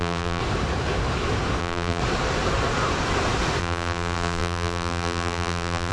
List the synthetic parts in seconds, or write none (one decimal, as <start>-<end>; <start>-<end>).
0.0-0.4; 1.6-2.0; 3.6-5.9